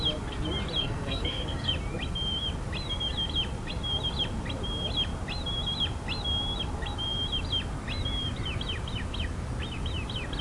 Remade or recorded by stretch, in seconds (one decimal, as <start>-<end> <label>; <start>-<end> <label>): 0.0-0.8 recorded; 0.8-1.7 remade; 1.7-10.4 recorded